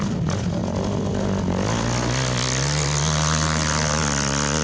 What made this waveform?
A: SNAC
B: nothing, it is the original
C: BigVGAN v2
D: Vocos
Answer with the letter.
B